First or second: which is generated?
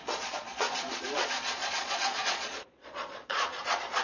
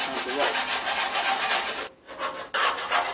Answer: first